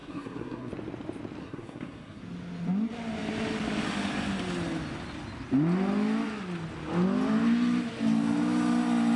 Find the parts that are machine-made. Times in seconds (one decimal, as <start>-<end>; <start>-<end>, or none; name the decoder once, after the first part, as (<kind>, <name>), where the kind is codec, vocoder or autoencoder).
0.0-0.7 (codec, SNAC); 1.4-2.2